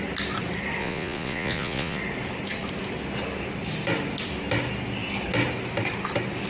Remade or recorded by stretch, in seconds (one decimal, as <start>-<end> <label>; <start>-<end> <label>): 0.0-0.8 recorded; 0.8-2.0 remade; 2.0-6.5 recorded